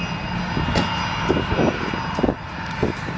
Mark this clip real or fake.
real